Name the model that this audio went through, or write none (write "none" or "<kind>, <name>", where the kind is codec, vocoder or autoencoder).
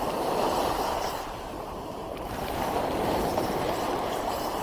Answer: vocoder, BigVGAN v2